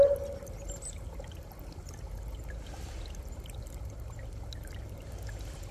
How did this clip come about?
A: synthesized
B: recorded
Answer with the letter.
B